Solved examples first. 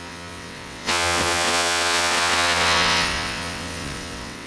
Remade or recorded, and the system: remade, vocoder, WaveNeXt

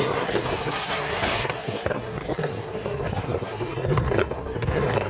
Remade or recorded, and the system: remade, codec, SNAC